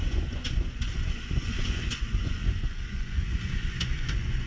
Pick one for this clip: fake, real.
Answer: fake